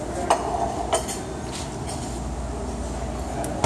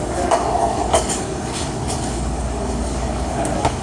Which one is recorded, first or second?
first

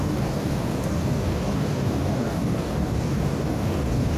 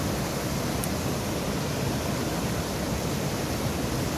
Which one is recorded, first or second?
second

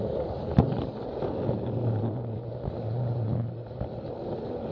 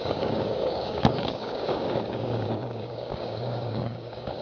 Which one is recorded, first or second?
first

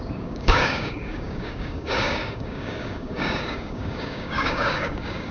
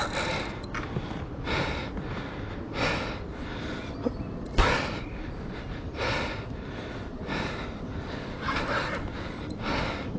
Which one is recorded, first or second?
second